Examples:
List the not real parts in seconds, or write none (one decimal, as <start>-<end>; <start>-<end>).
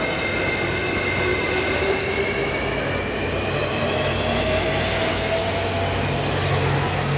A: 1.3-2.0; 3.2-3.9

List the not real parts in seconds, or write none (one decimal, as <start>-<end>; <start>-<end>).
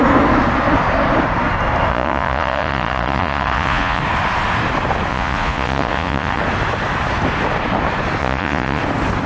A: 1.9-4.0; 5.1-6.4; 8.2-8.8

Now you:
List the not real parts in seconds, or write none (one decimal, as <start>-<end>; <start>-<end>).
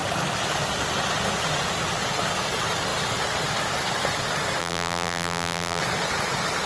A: 4.6-5.8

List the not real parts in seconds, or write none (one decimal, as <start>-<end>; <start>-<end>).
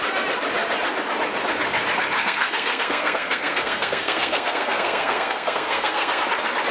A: 2.2-6.2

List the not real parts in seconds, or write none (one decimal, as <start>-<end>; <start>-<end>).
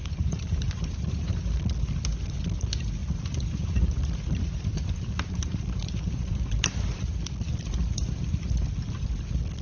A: 0.0-1.6; 3.0-6.8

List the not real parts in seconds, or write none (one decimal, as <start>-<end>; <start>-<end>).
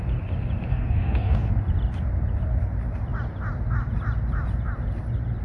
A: 0.7-1.5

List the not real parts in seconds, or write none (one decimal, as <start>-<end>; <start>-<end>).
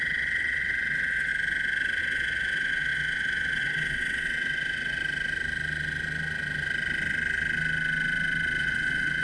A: 0.0-1.3; 2.0-5.0; 8.6-9.2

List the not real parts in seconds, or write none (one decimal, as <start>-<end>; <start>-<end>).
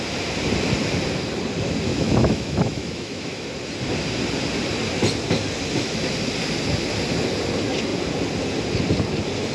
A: 1.9-3.5